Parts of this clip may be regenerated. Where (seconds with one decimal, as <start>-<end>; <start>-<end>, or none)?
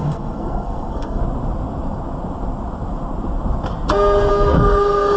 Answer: 0.0-1.2; 4.3-5.2